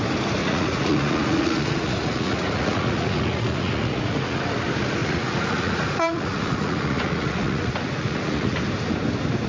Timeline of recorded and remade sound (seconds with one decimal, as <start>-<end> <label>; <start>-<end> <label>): 0.0-0.4 recorded; 0.4-4.4 remade; 4.4-5.0 recorded; 5.0-8.6 remade; 8.6-9.5 recorded